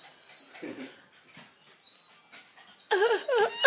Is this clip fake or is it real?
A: real